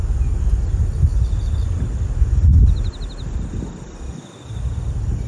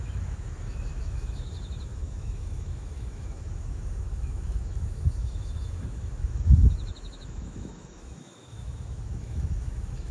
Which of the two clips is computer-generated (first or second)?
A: second